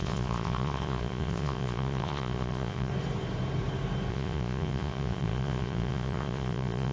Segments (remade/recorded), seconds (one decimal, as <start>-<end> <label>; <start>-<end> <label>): 0.0-2.9 remade; 2.9-4.1 recorded; 4.1-6.9 remade